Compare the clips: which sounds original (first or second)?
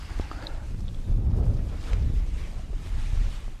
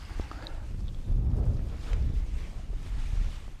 second